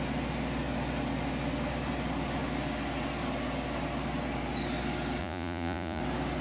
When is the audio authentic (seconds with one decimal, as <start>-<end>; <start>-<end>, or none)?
0.0-5.2; 6.0-6.4